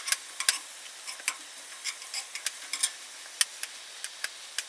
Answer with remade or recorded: recorded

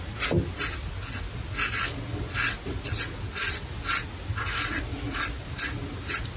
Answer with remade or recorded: recorded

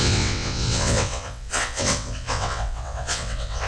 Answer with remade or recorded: remade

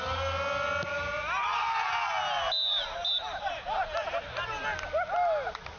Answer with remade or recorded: recorded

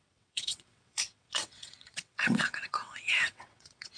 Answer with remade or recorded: remade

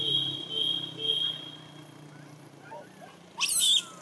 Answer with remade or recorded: recorded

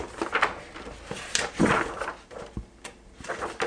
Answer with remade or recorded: recorded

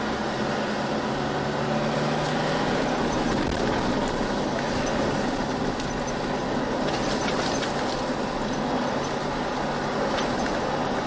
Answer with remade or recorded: recorded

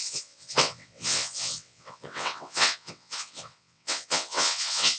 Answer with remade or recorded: remade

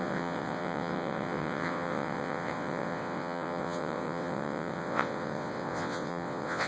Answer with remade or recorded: remade